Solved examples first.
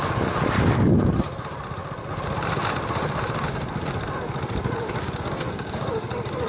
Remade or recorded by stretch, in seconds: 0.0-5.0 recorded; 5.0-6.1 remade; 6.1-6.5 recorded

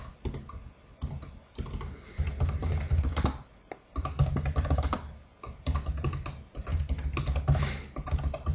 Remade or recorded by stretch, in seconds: 0.0-8.5 recorded